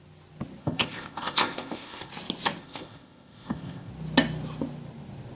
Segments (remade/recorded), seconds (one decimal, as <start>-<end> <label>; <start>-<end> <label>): 0.0-0.6 recorded; 0.6-2.1 remade; 2.1-2.6 recorded; 2.6-3.9 remade; 3.9-5.4 recorded